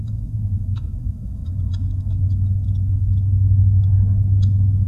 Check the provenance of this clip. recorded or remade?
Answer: remade